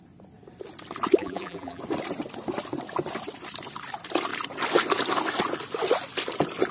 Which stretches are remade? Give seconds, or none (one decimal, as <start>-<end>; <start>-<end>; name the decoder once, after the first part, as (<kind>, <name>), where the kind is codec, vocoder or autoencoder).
1.2-1.8 (vocoder, BigVGAN v2)

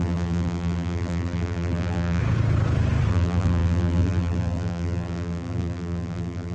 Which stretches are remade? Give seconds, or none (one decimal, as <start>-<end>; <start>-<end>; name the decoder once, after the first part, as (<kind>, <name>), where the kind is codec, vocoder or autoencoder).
0.0-2.2 (vocoder, BigVGAN v2); 3.1-6.5

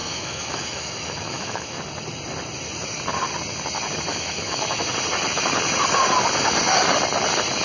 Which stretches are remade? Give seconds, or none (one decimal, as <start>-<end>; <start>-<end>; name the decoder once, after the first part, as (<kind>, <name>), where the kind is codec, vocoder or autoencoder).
0.0-1.8 (autoencoder, DAC-VAE); 4.1-4.9

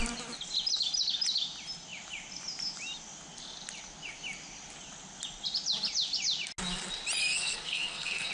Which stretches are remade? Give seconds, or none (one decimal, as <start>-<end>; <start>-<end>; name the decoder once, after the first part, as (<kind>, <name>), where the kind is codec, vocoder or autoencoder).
7.2-8.3 (codec, SNAC)

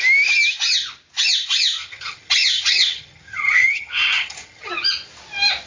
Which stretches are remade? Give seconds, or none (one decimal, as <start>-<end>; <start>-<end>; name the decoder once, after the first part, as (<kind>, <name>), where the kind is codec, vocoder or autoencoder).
1.8-4.7 (vocoder, HiFi-GAN)